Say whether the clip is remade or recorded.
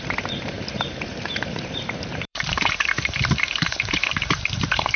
remade